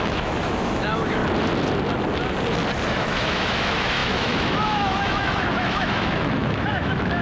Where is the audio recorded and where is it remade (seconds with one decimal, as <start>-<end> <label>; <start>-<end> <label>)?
0.0-1.2 remade; 1.2-2.9 recorded; 2.9-7.2 remade